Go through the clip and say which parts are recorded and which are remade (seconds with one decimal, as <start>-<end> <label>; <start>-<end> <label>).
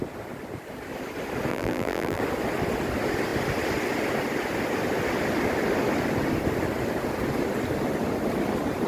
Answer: 0.0-1.5 recorded; 1.5-2.2 remade; 2.2-8.9 recorded